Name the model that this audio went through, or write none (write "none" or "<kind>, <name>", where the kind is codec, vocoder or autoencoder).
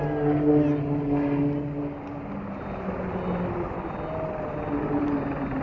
none